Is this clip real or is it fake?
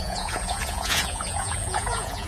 fake